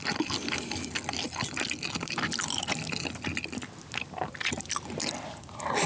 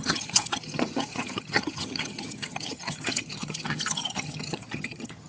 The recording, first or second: first